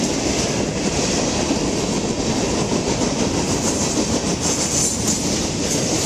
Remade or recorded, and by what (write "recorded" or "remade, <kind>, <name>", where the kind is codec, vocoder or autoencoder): recorded